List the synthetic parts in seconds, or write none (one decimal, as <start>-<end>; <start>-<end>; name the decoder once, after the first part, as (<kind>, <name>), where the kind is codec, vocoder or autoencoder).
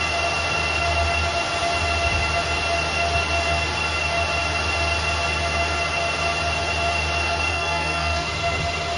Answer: 7.5-8.3 (codec, SNAC)